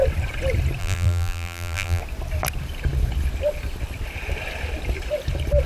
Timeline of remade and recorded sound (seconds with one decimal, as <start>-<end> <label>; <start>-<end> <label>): 0.0-0.8 recorded; 0.8-2.0 remade; 2.0-5.7 recorded